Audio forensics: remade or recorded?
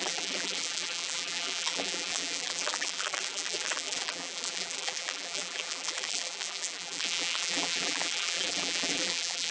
remade